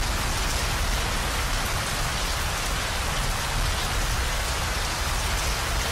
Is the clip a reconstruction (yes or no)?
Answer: no